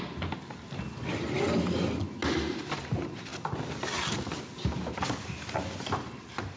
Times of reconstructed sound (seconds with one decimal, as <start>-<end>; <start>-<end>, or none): none